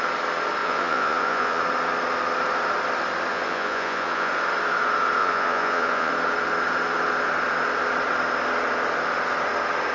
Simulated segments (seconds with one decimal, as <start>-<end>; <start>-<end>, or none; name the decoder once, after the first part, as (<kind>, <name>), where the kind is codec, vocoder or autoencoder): 0.6-1.6 (vocoder, Vocos); 3.3-4.3; 5.2-6.1